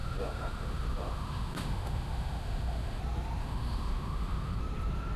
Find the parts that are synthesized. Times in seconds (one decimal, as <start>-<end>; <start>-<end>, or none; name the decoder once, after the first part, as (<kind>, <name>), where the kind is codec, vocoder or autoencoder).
0.0-3.0 (autoencoder, DAC-VAE); 3.4-4.6